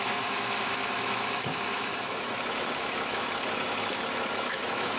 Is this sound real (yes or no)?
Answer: no